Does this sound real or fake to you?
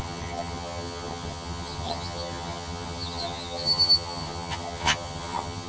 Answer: fake